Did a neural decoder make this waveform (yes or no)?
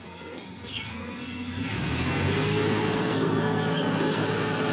yes